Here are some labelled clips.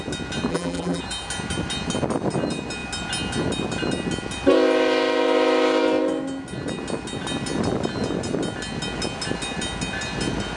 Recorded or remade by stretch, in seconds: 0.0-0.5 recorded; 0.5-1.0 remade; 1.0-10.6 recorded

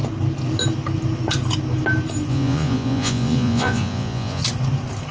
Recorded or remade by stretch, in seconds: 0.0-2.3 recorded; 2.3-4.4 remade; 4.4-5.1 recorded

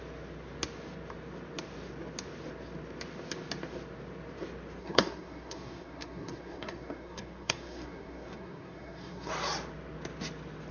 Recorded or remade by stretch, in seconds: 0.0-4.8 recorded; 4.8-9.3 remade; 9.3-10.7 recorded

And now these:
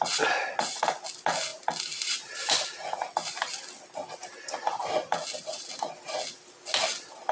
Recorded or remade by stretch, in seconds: 0.0-7.3 recorded